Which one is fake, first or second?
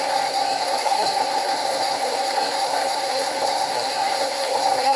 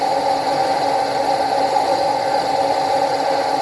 first